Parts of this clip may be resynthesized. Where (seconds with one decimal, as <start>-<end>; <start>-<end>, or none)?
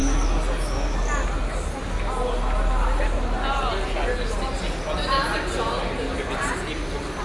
none